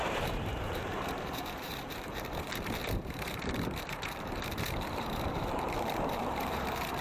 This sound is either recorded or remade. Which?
remade